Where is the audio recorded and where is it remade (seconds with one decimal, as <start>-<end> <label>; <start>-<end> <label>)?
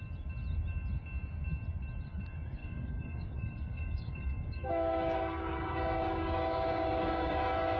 0.0-2.6 recorded; 2.6-7.3 remade; 7.3-7.8 recorded